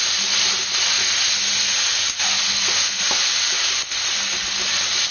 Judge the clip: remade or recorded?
recorded